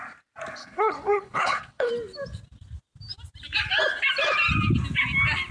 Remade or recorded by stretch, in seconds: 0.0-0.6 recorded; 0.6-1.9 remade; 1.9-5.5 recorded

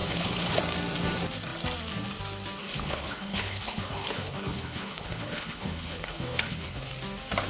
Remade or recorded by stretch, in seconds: 0.0-0.6 remade; 0.6-2.6 recorded; 2.6-6.9 remade; 6.9-7.5 recorded

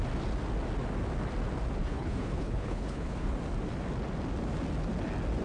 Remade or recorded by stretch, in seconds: 0.0-1.8 recorded; 1.8-3.3 remade; 3.3-5.4 recorded

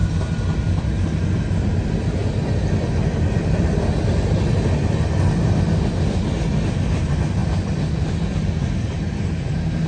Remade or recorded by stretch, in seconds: 0.0-9.9 recorded

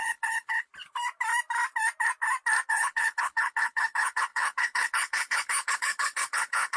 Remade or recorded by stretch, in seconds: 0.0-0.7 remade; 0.7-2.7 recorded; 2.7-6.8 remade

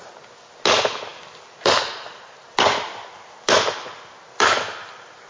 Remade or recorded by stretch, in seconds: 0.0-5.3 recorded